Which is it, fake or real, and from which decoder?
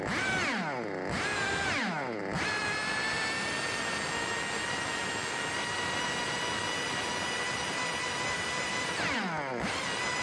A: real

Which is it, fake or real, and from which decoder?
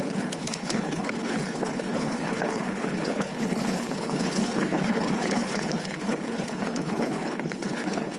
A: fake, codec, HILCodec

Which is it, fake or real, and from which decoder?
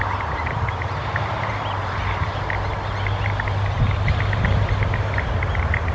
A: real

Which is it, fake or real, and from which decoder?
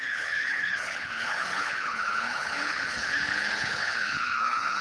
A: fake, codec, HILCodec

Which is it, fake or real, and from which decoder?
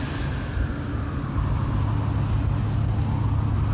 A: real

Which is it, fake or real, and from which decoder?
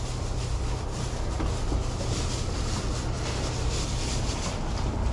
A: real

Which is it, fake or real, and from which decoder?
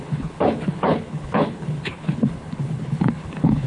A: fake, codec, HILCodec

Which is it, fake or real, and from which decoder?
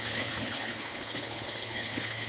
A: fake, codec, HILCodec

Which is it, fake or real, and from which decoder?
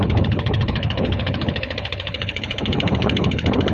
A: fake, codec, HILCodec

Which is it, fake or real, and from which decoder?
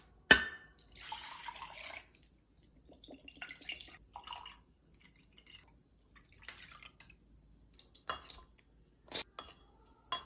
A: real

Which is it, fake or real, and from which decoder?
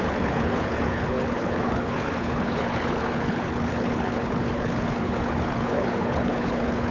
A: fake, codec, HILCodec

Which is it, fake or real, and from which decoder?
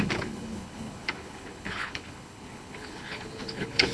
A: fake, codec, HILCodec